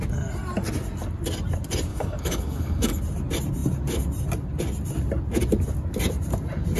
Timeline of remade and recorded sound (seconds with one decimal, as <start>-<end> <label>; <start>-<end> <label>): 0.0-1.9 recorded; 1.9-3.0 remade; 3.0-6.8 recorded